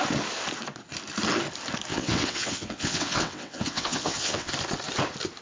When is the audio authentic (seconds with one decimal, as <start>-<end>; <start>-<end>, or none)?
0.0-1.9; 4.5-5.4